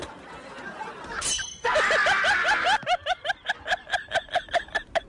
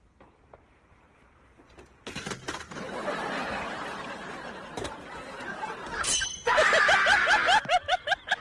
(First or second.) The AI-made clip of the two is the second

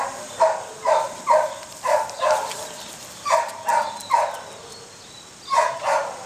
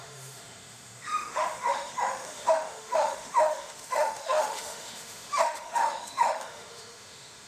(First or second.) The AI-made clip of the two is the second